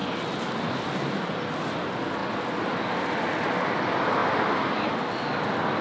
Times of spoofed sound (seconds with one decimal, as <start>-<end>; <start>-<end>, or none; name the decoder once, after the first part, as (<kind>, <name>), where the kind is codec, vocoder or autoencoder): none